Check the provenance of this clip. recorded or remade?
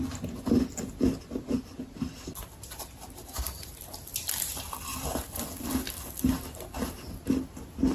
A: recorded